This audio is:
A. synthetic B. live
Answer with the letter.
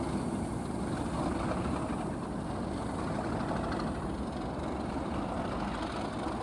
B